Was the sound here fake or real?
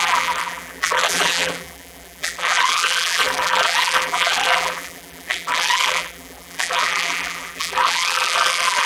fake